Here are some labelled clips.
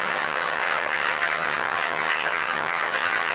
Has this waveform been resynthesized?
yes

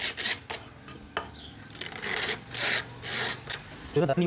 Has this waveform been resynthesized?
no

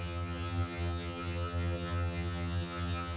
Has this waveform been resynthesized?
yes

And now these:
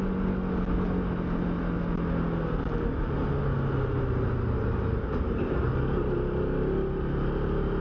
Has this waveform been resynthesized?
no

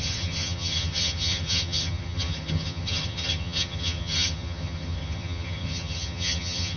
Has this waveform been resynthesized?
yes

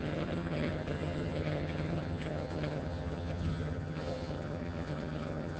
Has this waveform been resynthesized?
yes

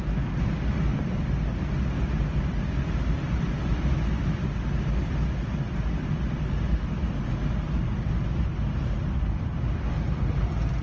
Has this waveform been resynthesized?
no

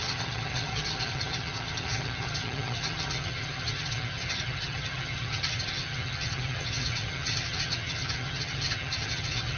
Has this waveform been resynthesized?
yes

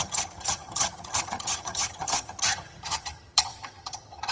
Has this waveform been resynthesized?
yes